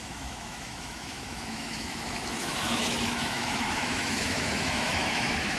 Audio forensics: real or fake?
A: fake